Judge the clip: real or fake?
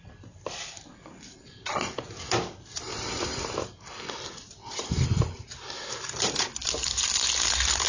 fake